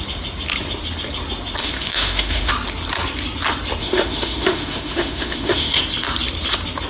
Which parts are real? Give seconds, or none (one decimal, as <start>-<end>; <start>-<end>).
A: 0.0-1.6; 2.5-3.8; 5.8-6.9